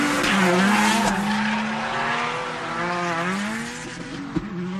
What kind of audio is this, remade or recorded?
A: recorded